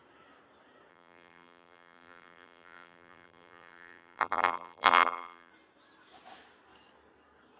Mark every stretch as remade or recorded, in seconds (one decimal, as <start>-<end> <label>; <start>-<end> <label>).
0.0-0.9 recorded; 0.9-5.5 remade; 5.5-7.6 recorded